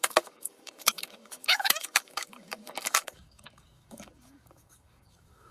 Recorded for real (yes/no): no